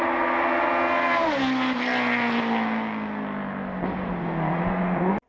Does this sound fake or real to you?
real